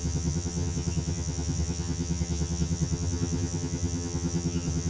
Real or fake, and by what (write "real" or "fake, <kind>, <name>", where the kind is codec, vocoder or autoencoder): fake, vocoder, HiFi-GAN